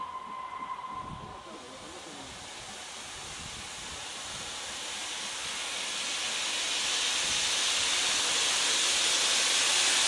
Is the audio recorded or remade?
recorded